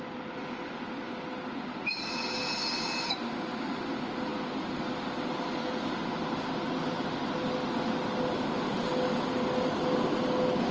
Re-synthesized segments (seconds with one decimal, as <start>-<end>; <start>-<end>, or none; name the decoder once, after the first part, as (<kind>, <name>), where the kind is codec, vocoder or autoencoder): none